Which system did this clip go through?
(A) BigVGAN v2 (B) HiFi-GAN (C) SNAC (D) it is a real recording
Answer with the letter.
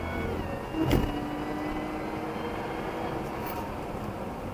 D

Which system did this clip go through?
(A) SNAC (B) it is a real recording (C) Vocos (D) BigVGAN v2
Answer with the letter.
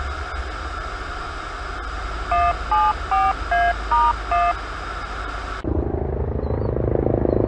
B